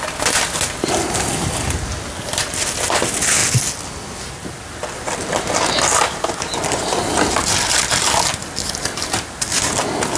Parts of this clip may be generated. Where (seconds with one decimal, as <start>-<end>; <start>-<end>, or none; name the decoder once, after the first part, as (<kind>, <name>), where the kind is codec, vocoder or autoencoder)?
none